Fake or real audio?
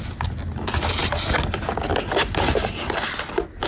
real